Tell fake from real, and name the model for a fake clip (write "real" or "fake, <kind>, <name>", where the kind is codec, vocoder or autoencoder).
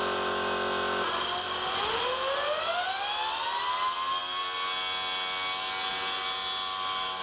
real